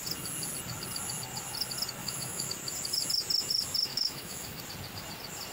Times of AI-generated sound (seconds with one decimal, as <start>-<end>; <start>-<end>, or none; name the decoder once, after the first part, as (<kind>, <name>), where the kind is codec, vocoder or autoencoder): 2.0-2.5 (autoencoder, DAC-VAE); 3.9-4.6